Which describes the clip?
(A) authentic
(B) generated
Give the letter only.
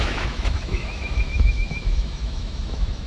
B